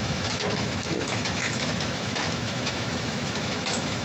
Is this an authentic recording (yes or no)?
no